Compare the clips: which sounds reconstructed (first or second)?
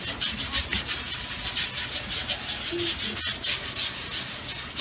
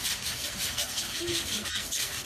second